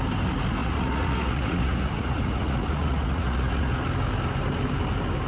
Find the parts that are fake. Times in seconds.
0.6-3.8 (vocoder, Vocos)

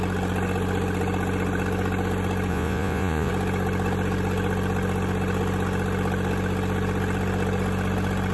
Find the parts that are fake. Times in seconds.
2.5-3.3 (vocoder, Vocos)

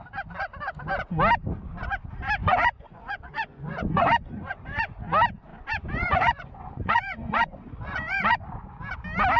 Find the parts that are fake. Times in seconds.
2.4-5.0 (vocoder, Vocos); 5.5-8.8

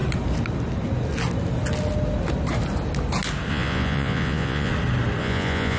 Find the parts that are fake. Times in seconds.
3.5-4.7 (vocoder, Vocos); 5.2-5.8

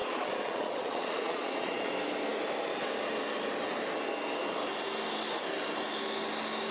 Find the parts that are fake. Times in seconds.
0.0-1.9 (vocoder, Vocos)

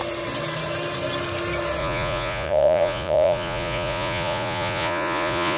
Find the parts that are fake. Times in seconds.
1.8-5.6 (vocoder, Vocos)